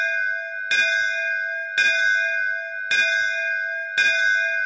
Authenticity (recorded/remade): recorded